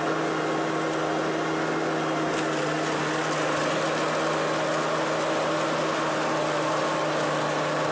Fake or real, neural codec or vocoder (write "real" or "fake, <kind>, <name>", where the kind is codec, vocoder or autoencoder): real